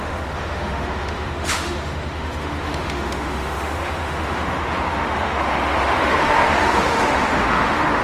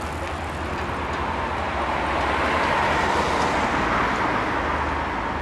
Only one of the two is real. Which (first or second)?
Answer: second